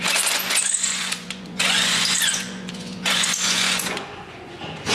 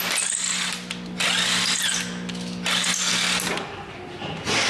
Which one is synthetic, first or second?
first